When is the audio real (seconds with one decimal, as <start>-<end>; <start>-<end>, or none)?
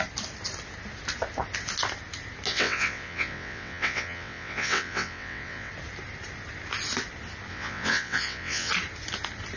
0.0-2.5; 5.7-7.5; 8.7-9.6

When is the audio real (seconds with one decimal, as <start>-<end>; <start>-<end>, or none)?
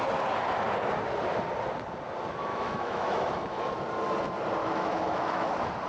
0.0-2.5; 3.7-4.6; 5.5-5.9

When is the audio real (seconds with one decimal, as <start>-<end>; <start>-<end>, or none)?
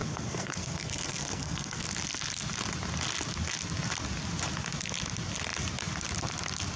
1.8-6.8